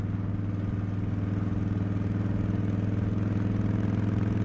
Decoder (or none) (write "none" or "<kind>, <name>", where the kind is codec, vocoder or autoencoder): none